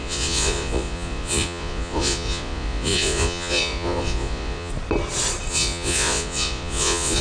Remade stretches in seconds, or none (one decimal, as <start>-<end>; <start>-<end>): 0.0-4.7; 5.5-7.2